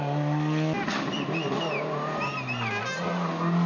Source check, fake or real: real